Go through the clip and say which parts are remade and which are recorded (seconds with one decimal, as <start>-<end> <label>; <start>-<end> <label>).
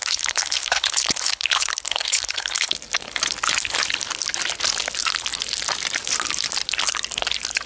0.0-2.7 remade; 2.7-7.7 recorded